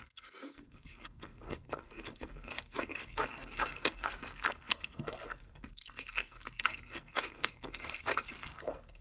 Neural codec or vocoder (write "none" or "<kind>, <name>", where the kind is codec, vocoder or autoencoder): codec, SNAC